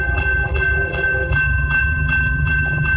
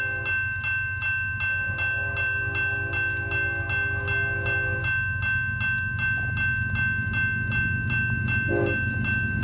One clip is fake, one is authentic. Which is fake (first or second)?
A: first